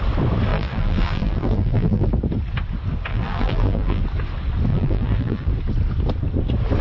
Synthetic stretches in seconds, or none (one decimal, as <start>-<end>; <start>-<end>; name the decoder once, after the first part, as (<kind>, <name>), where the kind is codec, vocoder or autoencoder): 0.5-2.1 (vocoder, BigVGAN v2); 3.1-4.0; 4.7-5.5

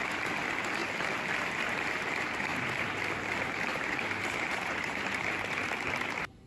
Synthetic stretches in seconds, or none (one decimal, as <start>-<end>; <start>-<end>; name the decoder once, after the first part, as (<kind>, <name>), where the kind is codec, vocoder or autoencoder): 2.5-3.0 (vocoder, BigVGAN v2); 3.7-5.7

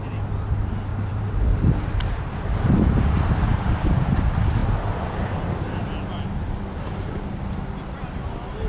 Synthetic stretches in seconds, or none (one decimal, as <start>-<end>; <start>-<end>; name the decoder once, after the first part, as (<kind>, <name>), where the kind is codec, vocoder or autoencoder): 0.9-2.9 (vocoder, BigVGAN v2)

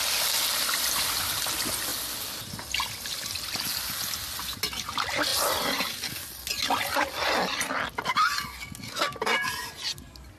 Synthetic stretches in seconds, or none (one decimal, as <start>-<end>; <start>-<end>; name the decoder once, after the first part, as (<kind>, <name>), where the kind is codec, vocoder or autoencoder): none

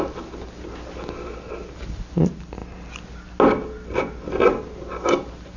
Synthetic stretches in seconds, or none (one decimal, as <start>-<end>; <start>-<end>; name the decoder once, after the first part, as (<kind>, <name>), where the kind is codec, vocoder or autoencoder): none